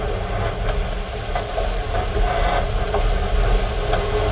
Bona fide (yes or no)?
yes